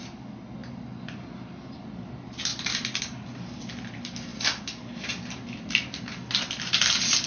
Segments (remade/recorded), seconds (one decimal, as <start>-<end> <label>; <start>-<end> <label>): 0.0-7.3 recorded

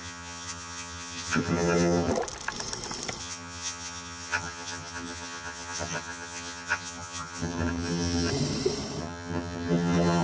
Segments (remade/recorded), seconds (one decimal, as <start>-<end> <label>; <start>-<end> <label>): 0.0-2.1 remade; 2.1-3.2 recorded; 3.2-8.3 remade; 8.3-9.0 recorded; 9.0-10.2 remade

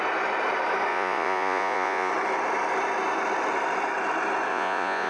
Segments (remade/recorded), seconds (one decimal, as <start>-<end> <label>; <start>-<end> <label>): 0.0-0.9 recorded; 0.9-2.1 remade; 2.1-4.5 recorded; 4.5-5.1 remade

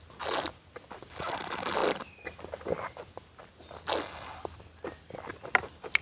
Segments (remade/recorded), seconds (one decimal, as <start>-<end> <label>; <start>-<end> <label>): 0.0-6.0 recorded

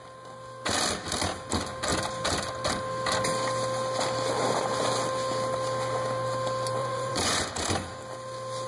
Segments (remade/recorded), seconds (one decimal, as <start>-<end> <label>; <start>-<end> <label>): 0.0-6.8 recorded; 6.8-7.5 remade; 7.5-8.7 recorded